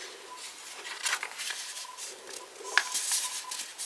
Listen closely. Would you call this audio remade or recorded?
recorded